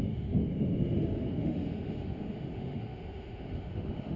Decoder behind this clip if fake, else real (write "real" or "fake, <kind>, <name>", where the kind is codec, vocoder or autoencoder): fake, autoencoder, DAC-VAE